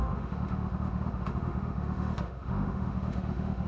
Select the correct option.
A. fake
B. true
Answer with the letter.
A